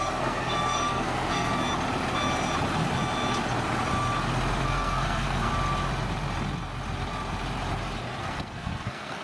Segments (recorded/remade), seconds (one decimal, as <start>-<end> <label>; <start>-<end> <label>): 0.0-1.5 remade; 1.5-4.6 recorded; 4.6-5.5 remade; 5.5-8.2 recorded; 8.2-9.2 remade